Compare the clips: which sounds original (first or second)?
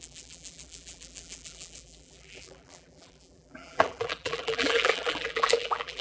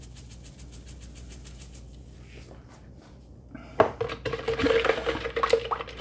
second